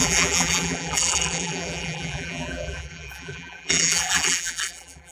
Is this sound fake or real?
fake